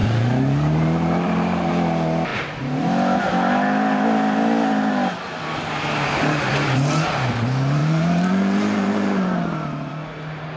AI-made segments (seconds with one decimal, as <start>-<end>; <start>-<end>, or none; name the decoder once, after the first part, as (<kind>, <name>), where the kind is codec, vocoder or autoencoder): 0.0-1.7 (vocoder, BigVGAN v2); 7.8-9.9